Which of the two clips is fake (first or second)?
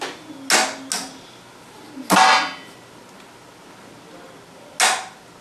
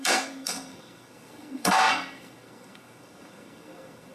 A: second